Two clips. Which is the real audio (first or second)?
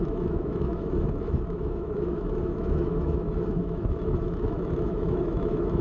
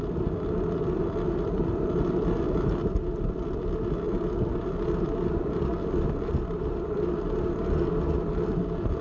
second